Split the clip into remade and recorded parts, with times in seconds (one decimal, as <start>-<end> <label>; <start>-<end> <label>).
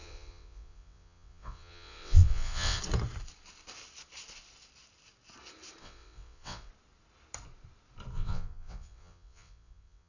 0.0-2.8 remade; 2.8-5.8 recorded; 5.8-6.7 remade; 6.7-8.1 recorded; 8.1-10.1 remade